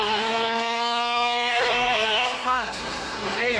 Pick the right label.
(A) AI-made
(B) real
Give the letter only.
A